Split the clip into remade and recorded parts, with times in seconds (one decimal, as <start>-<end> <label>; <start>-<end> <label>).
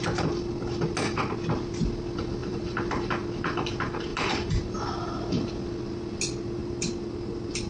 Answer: 0.0-2.4 recorded; 2.4-3.1 remade; 3.1-4.1 recorded; 4.1-5.5 remade; 5.5-7.7 recorded